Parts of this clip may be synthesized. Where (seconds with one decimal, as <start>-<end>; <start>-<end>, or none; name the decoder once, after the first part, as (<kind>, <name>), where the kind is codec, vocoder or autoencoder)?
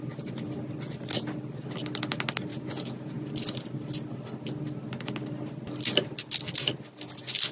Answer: 2.5-3.3 (vocoder, Vocos)